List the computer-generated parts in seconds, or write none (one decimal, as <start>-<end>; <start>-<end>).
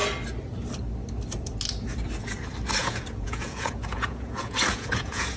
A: 2.8-5.4